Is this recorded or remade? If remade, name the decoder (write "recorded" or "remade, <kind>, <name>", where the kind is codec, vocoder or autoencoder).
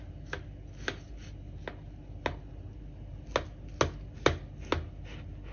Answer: recorded